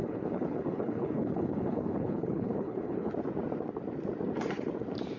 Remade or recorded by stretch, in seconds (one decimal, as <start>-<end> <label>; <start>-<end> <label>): 0.0-3.1 remade; 3.1-5.2 recorded